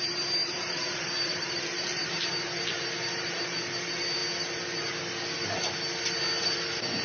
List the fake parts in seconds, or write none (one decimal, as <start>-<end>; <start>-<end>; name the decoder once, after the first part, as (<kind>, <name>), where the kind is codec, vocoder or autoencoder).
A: 0.4-2.3 (vocoder, BigVGAN v2)